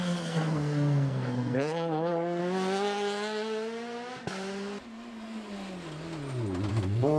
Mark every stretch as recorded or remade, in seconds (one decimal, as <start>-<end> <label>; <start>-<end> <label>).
0.0-2.4 remade; 2.4-6.7 recorded; 6.7-7.2 remade